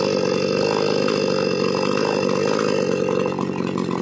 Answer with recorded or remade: recorded